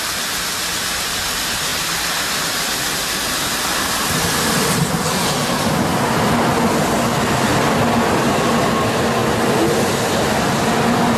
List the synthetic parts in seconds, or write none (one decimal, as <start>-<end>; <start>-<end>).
none